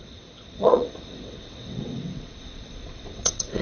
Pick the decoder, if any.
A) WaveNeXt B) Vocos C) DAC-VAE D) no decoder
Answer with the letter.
A